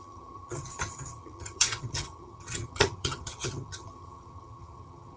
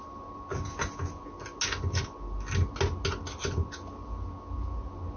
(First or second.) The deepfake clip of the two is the first